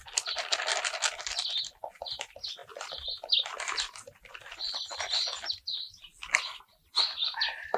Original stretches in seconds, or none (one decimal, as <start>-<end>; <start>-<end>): 0.0-7.8